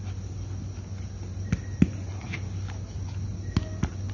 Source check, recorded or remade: recorded